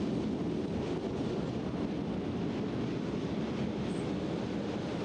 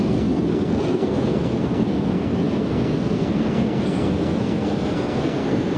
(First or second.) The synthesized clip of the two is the second